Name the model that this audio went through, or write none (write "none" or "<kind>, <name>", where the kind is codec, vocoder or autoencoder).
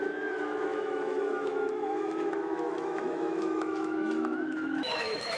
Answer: autoencoder, DAC-VAE